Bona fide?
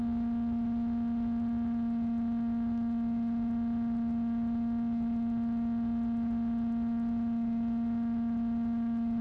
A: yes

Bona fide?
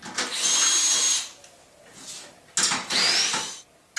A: yes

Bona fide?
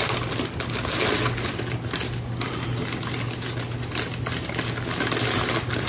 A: yes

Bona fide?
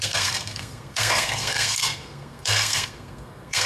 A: no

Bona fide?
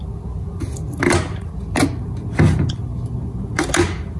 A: yes